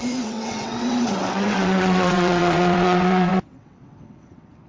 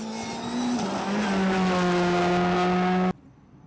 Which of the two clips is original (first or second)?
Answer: second